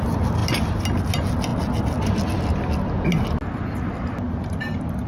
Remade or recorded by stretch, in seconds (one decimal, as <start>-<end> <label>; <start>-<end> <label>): 0.0-5.1 recorded